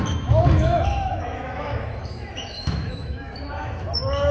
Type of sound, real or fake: fake